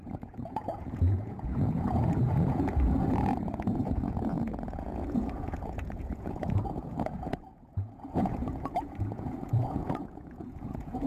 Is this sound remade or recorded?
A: remade